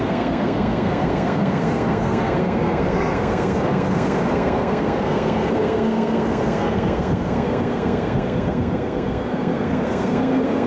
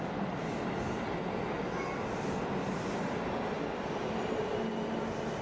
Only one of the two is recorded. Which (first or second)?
second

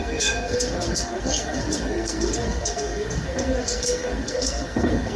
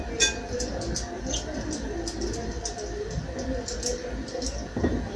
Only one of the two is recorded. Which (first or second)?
second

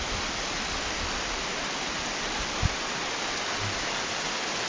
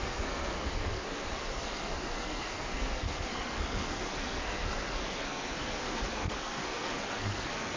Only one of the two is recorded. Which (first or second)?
first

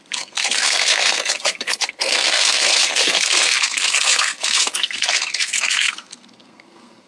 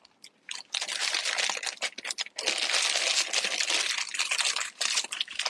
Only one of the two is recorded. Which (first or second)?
second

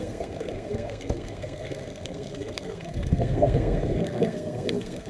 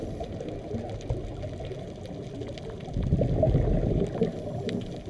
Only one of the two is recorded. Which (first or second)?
second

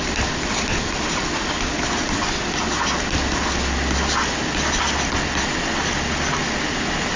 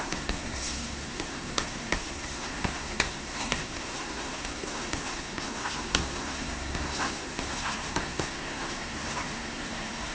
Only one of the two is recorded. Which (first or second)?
first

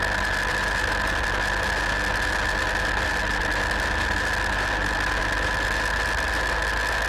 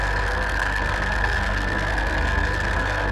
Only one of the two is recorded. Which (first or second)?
first